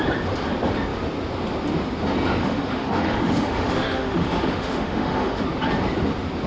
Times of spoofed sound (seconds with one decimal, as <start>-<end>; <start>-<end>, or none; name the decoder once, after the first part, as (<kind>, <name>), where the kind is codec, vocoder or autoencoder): 2.4-5.4 (autoencoder, DAC-VAE)